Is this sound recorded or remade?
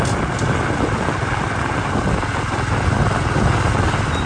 recorded